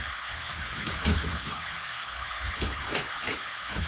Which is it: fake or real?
fake